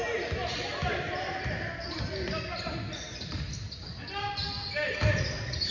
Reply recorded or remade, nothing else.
recorded